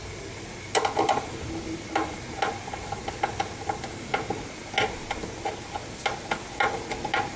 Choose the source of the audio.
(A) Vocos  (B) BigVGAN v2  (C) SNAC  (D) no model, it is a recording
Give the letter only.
D